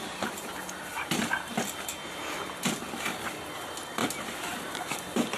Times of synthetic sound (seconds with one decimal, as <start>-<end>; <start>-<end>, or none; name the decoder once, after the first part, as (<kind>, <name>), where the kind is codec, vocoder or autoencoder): 0.8-1.5 (vocoder, BigVGAN v2); 4.0-5.0